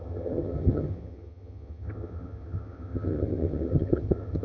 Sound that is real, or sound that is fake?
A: fake